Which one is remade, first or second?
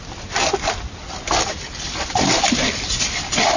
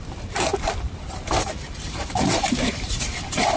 second